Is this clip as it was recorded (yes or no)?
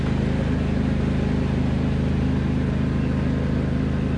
yes